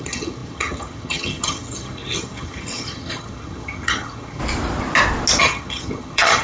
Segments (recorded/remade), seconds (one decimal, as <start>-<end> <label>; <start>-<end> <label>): 0.0-4.4 remade; 4.4-5.4 recorded; 5.4-6.4 remade